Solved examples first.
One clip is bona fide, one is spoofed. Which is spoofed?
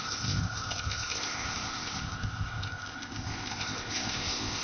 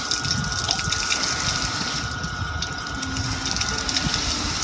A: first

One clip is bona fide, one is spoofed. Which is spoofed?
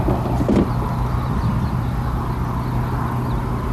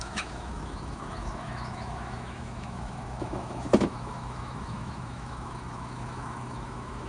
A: second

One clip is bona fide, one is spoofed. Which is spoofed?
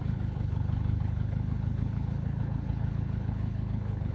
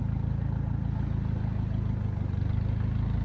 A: first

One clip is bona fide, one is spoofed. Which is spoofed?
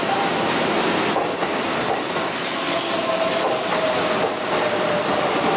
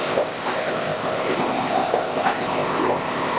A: second